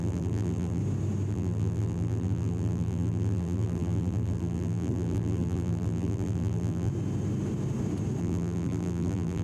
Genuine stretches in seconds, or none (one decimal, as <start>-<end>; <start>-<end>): 0.8-1.3; 6.9-8.2